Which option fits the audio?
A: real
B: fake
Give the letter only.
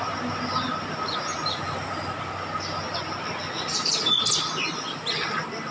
A